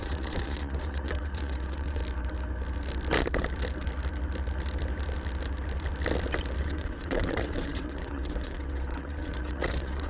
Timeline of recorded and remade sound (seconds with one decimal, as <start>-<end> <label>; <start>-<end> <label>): 0.0-2.0 remade; 2.0-6.6 recorded; 6.6-10.1 remade